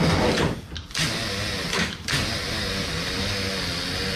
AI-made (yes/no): no